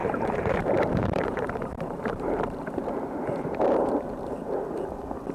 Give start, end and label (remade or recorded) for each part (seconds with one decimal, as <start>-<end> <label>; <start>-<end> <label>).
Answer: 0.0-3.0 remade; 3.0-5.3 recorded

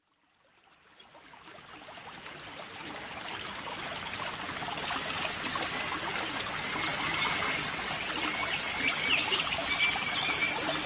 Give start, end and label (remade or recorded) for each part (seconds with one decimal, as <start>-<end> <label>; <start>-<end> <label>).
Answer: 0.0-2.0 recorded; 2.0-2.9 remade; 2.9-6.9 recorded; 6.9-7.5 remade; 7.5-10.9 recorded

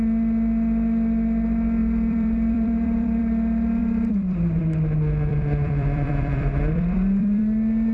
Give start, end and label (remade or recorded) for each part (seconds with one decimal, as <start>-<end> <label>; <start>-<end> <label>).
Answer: 0.0-1.8 recorded; 1.8-3.2 remade; 3.2-3.8 recorded; 3.8-4.6 remade; 4.6-5.3 recorded; 5.3-7.4 remade; 7.4-7.9 recorded

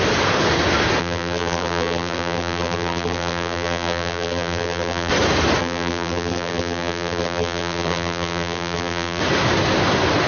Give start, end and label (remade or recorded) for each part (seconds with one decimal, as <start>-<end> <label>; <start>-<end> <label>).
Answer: 0.0-1.0 recorded; 1.0-5.1 remade; 5.1-5.6 recorded; 5.6-9.2 remade; 9.2-10.3 recorded